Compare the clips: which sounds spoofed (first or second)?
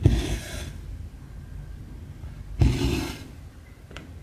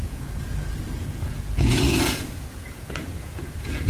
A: second